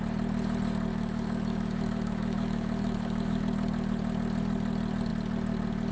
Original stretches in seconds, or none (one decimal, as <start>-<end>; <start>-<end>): 0.0-0.9; 3.4-5.9